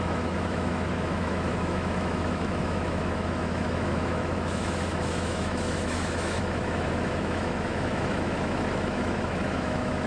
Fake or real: fake